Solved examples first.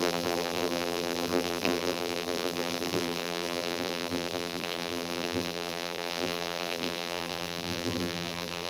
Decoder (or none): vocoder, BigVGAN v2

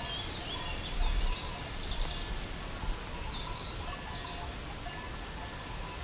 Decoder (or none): none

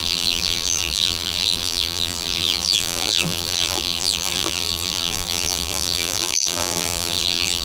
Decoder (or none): vocoder, BigVGAN v2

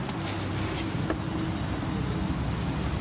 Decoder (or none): none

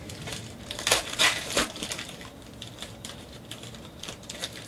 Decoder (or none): vocoder, BigVGAN v2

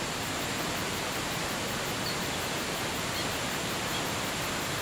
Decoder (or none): vocoder, BigVGAN v2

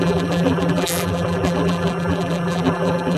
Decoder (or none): vocoder, BigVGAN v2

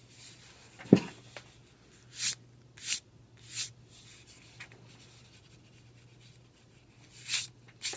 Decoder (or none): none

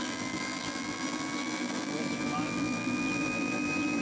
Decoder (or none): vocoder, BigVGAN v2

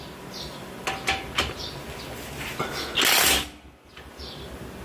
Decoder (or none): none